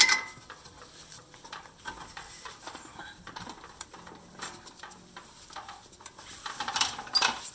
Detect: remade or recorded remade